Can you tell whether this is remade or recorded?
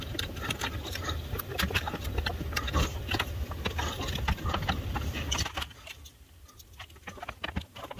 recorded